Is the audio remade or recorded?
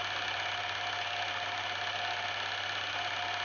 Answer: recorded